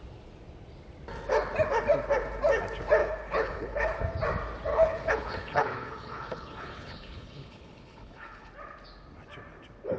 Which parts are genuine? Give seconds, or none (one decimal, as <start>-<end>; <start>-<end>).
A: 0.0-3.0; 4.0-4.7; 8.5-10.0